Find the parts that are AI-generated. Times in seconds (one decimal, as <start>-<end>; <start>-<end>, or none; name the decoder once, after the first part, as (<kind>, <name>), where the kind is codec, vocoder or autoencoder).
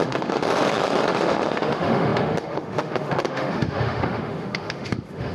0.0-5.3 (autoencoder, DAC-VAE)